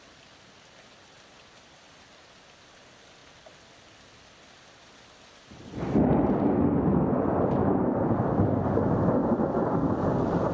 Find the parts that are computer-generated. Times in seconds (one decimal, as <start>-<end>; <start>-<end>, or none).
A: 9.2-10.5